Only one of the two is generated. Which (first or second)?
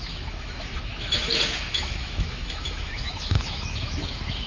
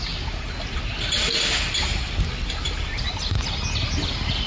first